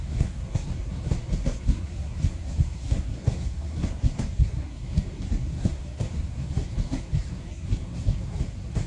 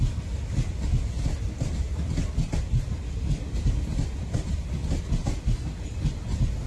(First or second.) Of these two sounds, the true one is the second